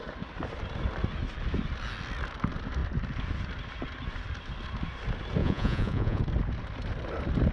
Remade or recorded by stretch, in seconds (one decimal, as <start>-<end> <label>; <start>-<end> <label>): 0.0-5.4 recorded; 5.4-6.2 remade; 6.2-7.5 recorded